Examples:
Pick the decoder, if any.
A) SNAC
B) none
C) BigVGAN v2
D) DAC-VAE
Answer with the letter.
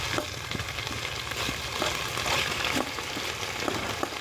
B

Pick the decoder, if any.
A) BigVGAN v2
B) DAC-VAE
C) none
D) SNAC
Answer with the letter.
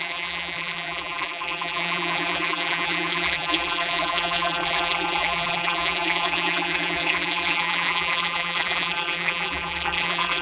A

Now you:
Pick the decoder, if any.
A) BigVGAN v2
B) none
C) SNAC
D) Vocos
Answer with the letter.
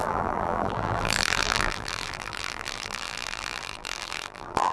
A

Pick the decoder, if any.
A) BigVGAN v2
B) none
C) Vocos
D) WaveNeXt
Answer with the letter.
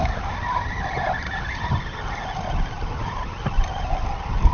A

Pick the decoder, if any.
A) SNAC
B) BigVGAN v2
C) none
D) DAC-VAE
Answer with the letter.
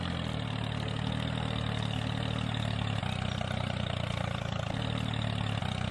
C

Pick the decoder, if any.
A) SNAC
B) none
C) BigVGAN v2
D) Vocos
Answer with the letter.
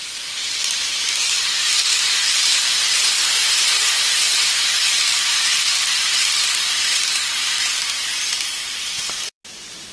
C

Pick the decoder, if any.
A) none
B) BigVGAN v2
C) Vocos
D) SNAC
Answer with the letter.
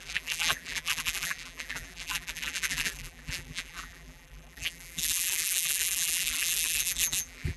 B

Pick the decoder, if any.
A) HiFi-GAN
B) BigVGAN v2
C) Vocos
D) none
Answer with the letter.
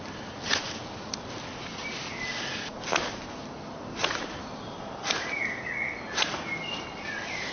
D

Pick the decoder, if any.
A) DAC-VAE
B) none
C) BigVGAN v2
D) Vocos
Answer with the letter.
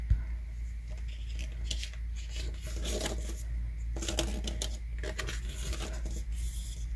B